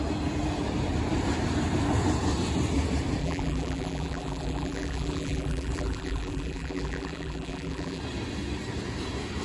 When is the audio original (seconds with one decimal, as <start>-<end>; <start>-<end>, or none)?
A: 0.0-3.2; 8.0-9.4

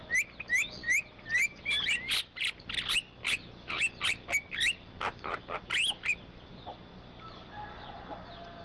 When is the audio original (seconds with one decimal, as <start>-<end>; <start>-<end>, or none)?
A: 0.0-6.9; 7.9-8.6

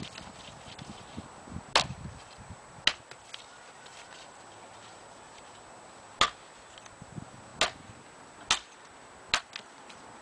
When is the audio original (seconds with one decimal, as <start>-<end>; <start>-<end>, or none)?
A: 0.0-10.2

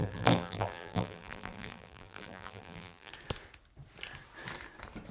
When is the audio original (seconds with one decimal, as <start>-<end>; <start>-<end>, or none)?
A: 3.1-5.1

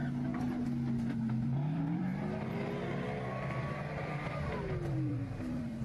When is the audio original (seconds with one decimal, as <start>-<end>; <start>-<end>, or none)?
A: 0.0-1.1; 2.1-3.6

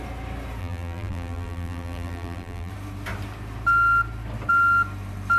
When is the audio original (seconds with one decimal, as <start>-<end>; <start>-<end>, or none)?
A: 0.0-0.6; 2.7-5.4

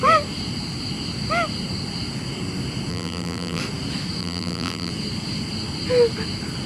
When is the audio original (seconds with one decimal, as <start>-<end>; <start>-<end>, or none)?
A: 0.0-2.9; 3.6-4.2; 4.9-6.7